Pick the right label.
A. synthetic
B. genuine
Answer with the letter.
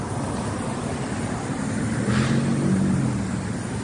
B